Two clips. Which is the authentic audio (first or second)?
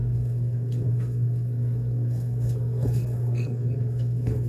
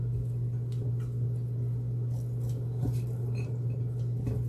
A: second